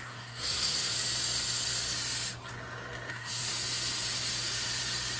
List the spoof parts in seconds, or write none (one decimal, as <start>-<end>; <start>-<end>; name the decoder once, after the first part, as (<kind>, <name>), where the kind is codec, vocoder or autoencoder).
0.0-0.9 (codec, SNAC); 3.1-3.5